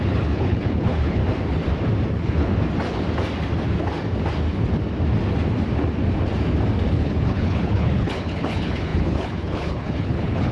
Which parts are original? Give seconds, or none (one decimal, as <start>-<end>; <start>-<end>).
1.2-2.1; 2.5-6.9